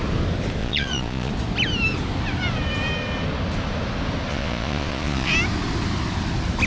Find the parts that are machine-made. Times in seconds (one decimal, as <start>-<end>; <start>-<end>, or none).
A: 0.6-1.3; 4.3-5.3